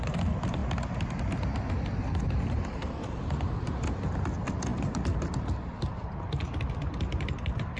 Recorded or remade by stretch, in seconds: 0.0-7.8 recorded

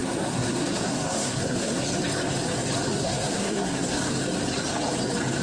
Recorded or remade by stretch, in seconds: 0.0-1.8 remade; 1.8-2.9 recorded; 2.9-4.0 remade; 4.0-5.4 recorded

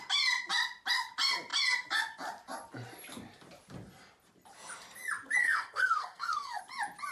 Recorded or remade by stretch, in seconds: 0.0-5.4 recorded; 5.4-6.6 remade; 6.6-7.1 recorded

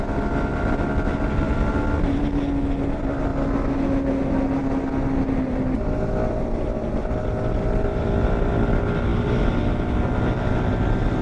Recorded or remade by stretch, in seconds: 0.0-11.2 recorded

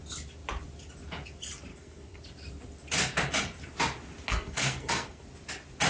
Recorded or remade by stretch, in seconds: 0.0-1.7 recorded; 1.7-2.2 remade; 2.2-4.3 recorded; 4.3-5.2 remade; 5.2-5.9 recorded

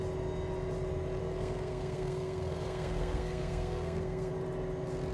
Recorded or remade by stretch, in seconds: 0.0-1.2 recorded; 1.2-4.3 remade; 4.3-5.1 recorded

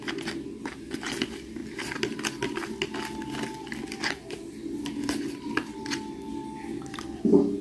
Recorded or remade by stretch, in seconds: 0.0-7.6 recorded

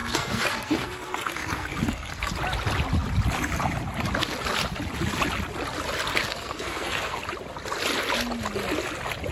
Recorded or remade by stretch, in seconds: 0.0-2.3 remade; 2.3-6.1 recorded; 6.1-7.2 remade; 7.2-9.3 recorded